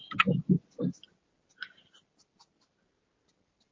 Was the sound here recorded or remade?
recorded